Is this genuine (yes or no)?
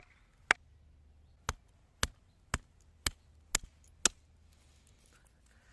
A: yes